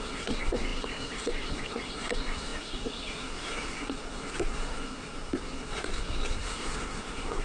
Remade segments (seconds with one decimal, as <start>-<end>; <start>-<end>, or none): 0.0-7.4